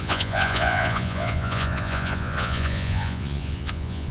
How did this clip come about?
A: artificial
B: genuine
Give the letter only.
A